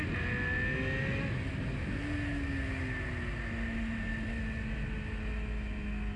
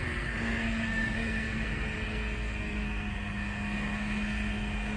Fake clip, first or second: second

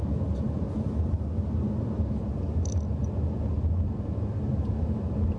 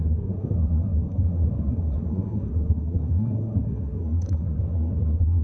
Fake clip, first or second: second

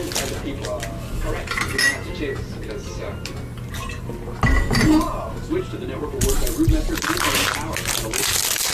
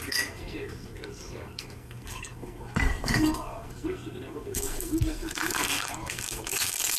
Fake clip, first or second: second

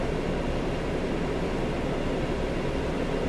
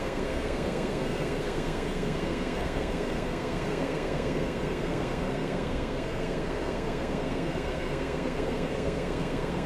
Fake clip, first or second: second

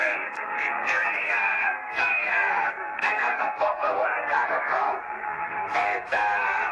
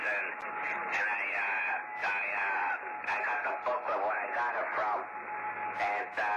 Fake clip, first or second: first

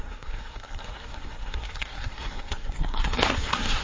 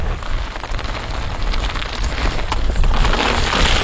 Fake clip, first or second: first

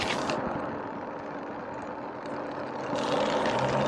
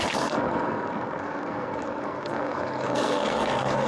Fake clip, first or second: second